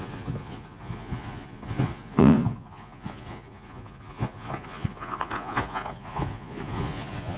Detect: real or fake fake